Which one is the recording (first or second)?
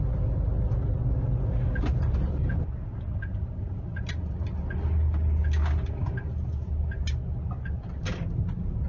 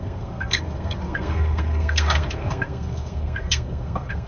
first